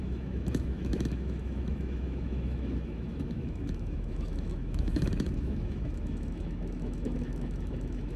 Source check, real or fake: fake